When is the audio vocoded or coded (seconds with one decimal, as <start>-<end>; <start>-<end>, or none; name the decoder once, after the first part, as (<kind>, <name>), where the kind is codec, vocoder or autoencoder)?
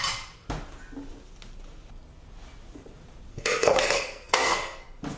3.3-4.8 (codec, SNAC)